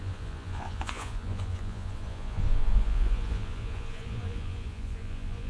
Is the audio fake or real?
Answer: fake